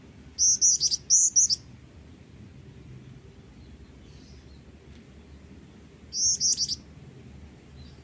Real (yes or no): yes